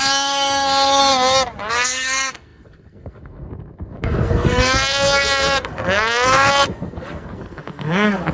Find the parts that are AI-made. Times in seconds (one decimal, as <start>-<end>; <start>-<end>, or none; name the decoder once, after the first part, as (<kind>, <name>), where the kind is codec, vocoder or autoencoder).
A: 0.0-1.0 (codec, SNAC); 1.7-8.3